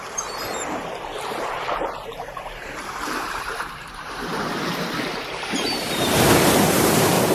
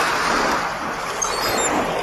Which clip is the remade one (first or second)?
first